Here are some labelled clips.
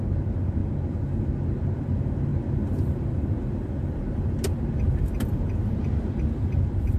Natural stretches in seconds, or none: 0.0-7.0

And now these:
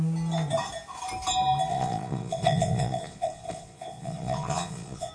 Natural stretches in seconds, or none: 0.0-1.7

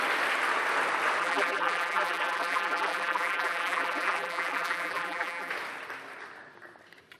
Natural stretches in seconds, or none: 0.0-1.2; 5.5-7.2

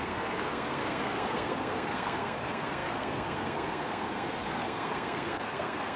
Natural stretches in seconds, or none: none

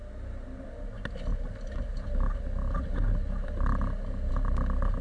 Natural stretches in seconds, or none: 0.0-5.0

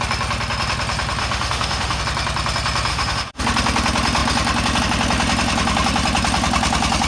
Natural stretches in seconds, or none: 0.0-1.2; 2.0-2.9; 3.4-7.1

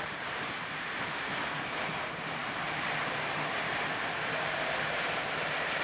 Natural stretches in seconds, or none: 2.4-3.7